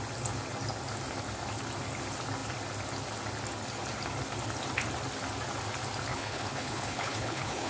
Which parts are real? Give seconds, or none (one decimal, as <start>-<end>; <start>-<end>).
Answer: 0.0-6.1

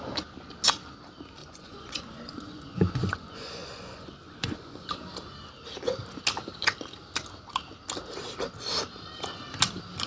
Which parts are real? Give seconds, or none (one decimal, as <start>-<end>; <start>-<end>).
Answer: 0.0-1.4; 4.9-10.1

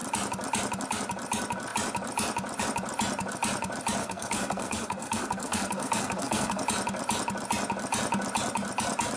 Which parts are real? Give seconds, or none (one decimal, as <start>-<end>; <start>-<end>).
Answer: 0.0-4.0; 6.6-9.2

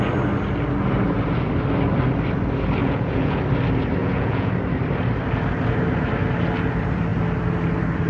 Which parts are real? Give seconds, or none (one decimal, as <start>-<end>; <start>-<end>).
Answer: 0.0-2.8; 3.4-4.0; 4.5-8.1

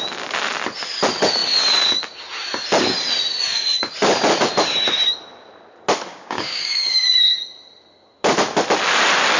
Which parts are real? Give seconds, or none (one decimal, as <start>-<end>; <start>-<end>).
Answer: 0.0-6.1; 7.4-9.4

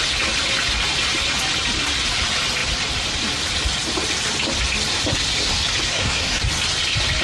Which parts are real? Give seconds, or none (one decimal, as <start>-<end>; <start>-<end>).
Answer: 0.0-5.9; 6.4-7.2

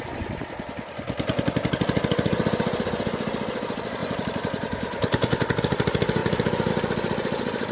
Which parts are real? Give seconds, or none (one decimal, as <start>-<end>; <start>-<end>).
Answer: 0.0-6.2; 6.7-7.7